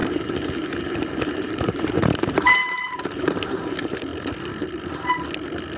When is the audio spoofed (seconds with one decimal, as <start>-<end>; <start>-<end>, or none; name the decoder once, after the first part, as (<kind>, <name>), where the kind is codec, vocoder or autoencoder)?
0.0-4.1 (vocoder, BigVGAN v2)